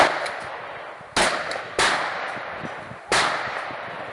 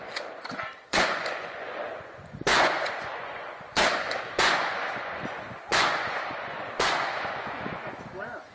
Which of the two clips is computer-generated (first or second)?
second